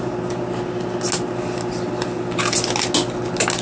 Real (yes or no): yes